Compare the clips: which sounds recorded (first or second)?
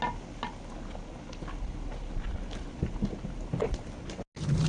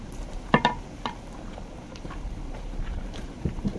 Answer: first